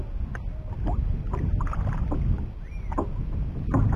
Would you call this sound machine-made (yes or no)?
no